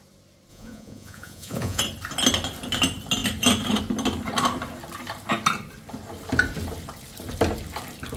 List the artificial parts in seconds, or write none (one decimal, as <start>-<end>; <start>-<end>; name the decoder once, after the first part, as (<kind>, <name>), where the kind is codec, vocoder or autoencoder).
0.5-1.8 (vocoder, Vocos)